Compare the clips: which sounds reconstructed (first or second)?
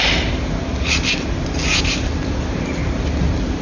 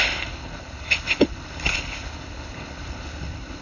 second